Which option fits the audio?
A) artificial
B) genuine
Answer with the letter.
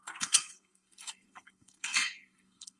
A